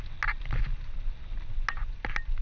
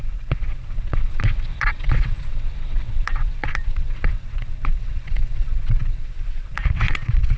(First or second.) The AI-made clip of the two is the second